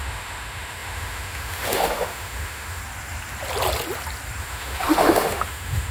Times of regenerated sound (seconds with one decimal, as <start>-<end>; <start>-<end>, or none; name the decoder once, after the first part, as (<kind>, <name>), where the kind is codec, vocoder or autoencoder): 0.0-2.8 (autoencoder, DAC-VAE); 4.4-5.9